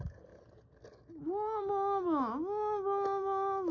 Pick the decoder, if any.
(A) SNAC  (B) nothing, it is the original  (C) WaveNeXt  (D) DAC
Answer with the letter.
B